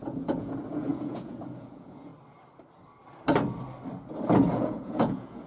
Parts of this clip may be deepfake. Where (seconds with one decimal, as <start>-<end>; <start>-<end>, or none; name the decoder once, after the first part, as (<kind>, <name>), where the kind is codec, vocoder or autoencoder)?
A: 0.0-2.1 (vocoder, Vocos); 4.5-5.5